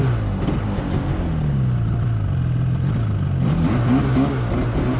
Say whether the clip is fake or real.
real